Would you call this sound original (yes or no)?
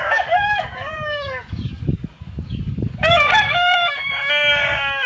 no